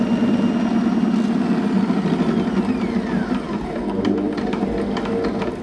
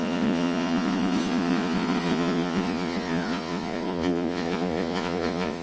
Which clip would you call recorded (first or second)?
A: first